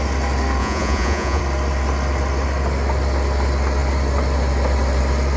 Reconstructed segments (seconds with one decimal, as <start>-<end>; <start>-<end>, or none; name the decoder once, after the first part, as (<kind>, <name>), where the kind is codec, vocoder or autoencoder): 0.6-1.4 (vocoder, Vocos)